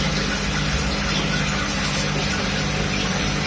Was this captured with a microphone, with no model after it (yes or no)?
yes